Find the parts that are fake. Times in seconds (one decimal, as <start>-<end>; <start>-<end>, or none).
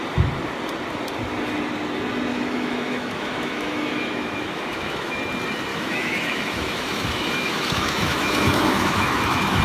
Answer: 2.3-5.2; 5.7-9.6